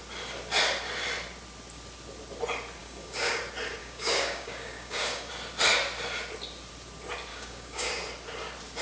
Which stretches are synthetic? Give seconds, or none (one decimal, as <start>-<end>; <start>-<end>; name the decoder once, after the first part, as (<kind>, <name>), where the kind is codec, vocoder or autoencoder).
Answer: 2.8-3.4 (codec, DAC); 3.8-5.3; 7.3-7.9